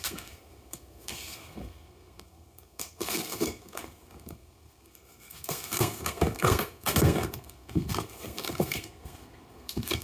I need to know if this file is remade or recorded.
remade